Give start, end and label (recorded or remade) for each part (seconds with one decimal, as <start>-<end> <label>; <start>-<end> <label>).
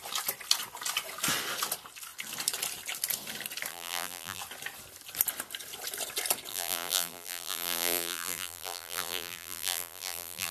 0.0-3.7 recorded; 3.7-4.4 remade; 4.4-6.5 recorded; 6.5-10.5 remade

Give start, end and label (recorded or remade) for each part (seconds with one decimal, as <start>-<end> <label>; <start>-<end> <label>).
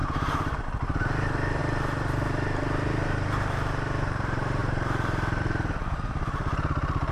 0.0-7.1 remade